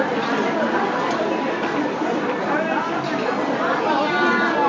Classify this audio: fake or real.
real